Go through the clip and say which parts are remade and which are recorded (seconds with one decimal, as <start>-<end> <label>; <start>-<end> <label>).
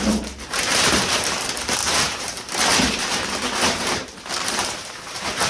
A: 0.0-5.5 remade